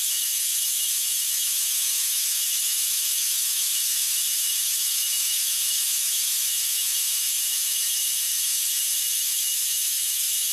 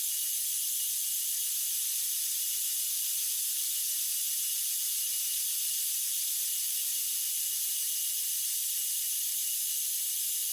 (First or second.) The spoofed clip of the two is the first